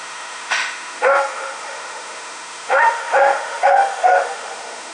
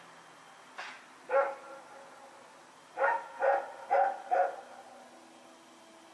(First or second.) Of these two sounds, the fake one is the first